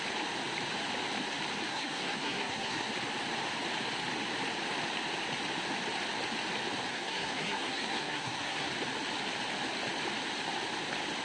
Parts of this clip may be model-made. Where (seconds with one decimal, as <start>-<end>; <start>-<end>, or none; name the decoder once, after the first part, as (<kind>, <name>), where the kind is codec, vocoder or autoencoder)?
1.7-2.9 (codec, SNAC); 6.9-8.7